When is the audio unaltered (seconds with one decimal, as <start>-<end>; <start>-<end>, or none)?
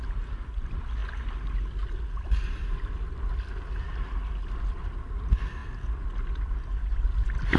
0.0-7.6